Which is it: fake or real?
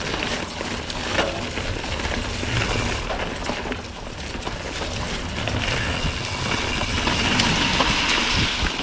real